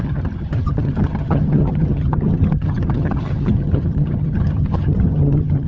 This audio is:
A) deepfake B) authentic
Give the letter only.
A